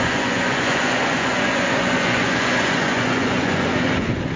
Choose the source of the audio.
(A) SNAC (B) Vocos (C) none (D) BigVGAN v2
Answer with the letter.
B